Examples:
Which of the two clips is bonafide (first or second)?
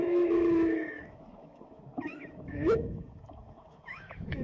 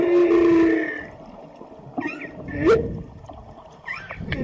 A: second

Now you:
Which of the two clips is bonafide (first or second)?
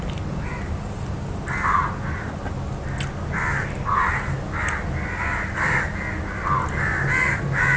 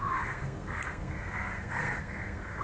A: first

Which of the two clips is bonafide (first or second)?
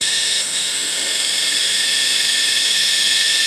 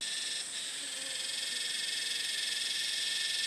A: second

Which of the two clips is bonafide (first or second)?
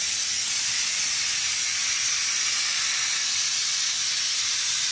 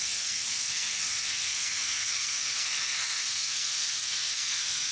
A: first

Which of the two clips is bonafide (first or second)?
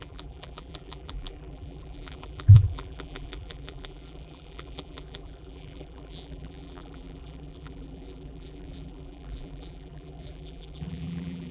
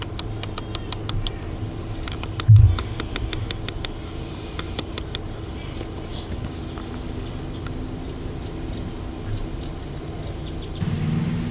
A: second